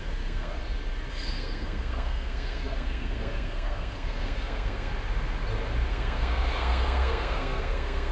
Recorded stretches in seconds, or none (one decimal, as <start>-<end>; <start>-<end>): 0.6-1.1; 4.9-5.9